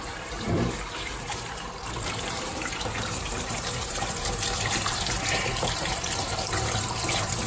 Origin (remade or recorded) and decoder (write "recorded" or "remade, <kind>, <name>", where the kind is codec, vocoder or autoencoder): remade, vocoder, BigVGAN v2